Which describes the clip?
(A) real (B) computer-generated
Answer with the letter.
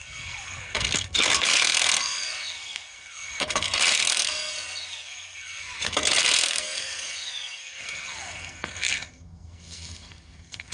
B